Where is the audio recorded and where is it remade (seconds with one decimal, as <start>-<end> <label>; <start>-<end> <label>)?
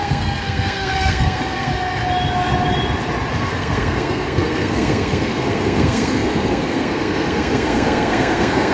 0.0-1.7 remade; 1.7-3.3 recorded; 3.3-8.7 remade